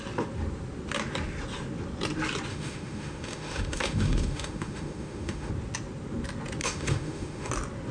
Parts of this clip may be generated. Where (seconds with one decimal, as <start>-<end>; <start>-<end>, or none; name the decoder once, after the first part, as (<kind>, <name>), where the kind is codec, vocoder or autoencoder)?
2.5-5.5 (autoencoder, DAC-VAE); 6.6-7.5